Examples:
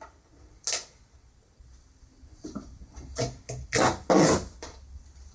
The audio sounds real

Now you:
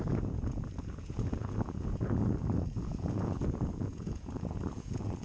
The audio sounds fake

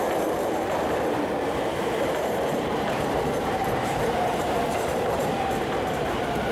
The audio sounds fake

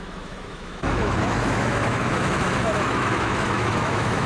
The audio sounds fake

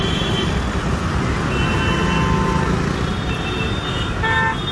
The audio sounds real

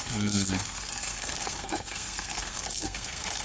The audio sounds fake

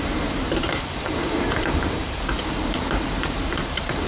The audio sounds fake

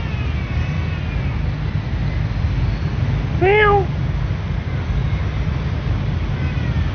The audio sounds real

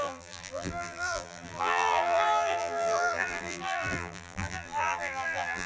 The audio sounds fake